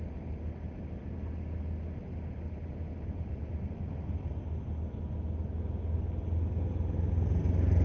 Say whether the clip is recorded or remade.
recorded